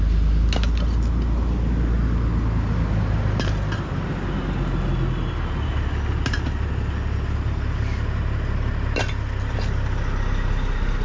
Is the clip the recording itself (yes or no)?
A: yes